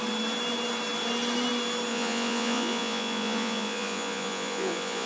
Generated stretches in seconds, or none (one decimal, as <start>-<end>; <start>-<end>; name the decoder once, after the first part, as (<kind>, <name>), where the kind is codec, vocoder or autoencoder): 1.9-5.1 (vocoder, Vocos)